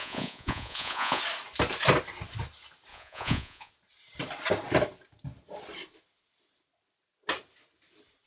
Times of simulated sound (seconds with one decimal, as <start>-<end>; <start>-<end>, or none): 0.0-1.2; 2.9-3.7